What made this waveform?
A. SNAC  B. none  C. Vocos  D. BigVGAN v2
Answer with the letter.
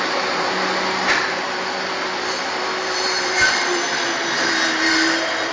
D